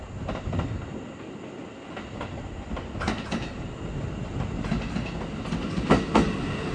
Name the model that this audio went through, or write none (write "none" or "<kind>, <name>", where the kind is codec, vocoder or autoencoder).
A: none